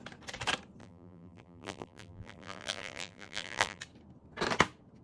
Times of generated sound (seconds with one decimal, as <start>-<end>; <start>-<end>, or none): 0.8-3.8